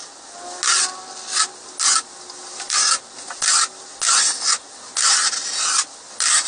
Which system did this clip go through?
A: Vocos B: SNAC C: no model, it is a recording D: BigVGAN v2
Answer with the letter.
C